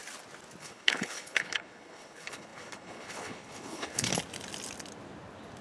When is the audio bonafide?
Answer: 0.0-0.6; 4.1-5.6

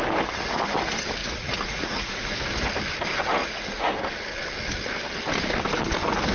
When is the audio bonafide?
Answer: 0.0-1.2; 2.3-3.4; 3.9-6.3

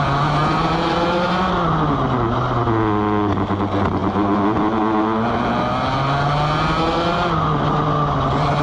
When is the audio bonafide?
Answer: 0.0-8.6

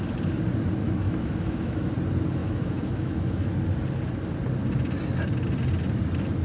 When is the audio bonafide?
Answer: 0.0-0.8; 1.9-2.4; 3.4-6.4